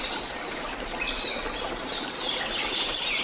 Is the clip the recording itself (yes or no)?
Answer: yes